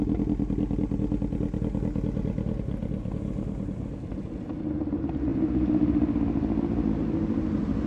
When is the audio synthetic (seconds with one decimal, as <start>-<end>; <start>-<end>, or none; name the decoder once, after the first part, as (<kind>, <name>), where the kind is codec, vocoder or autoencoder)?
none